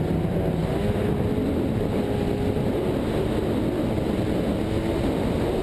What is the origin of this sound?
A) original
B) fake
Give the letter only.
A